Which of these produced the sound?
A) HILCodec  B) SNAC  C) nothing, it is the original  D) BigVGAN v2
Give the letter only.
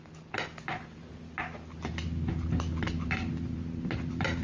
C